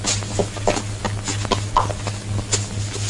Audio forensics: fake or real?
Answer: real